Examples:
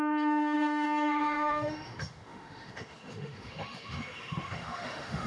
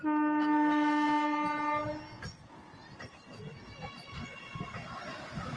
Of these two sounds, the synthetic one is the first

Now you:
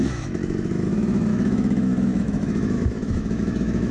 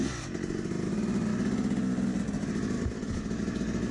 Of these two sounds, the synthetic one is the first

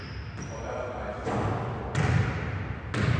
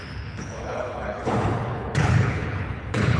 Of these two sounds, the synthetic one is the second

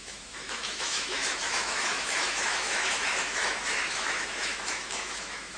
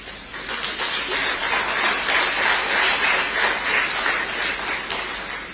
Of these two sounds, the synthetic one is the first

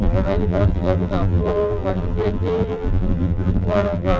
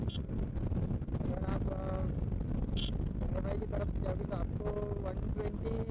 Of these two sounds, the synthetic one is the first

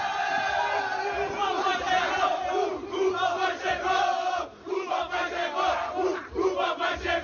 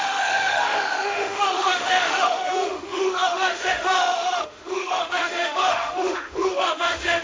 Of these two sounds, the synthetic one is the second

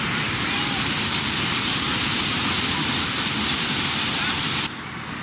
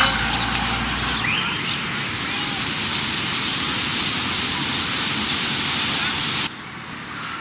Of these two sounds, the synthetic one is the first